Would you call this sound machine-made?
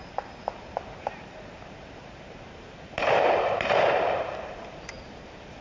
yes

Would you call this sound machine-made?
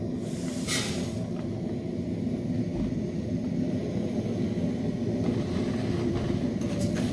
no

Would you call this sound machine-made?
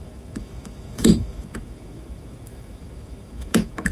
yes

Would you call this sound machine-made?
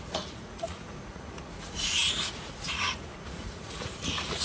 yes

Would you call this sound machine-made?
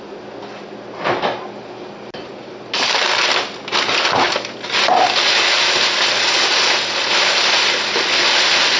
no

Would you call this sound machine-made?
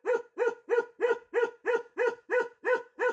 no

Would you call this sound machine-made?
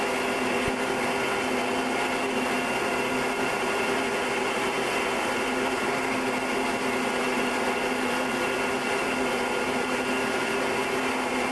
no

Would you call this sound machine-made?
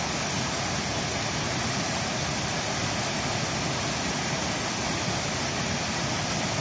no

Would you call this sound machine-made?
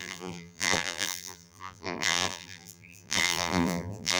yes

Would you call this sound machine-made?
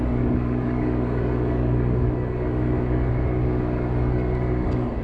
yes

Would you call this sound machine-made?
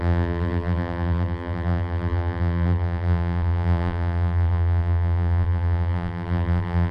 yes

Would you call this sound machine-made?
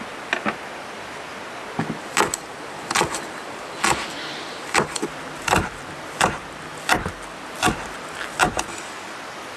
no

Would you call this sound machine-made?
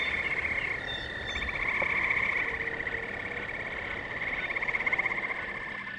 no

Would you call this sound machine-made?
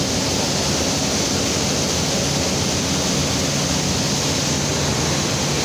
no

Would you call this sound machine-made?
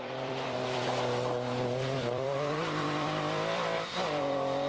yes